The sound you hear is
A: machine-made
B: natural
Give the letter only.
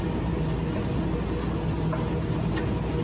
B